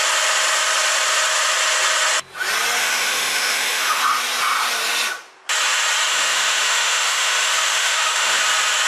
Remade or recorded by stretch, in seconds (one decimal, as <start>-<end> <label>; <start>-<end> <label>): 0.0-2.8 recorded; 2.8-4.0 remade; 4.0-6.1 recorded; 6.1-8.4 remade; 8.4-8.9 recorded